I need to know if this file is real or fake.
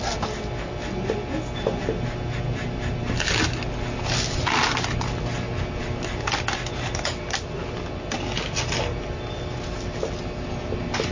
real